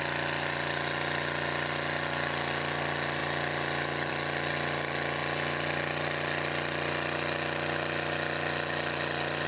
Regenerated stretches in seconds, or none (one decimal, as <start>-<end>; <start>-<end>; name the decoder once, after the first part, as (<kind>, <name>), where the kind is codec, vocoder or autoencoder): none